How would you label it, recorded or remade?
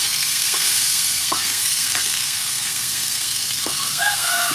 remade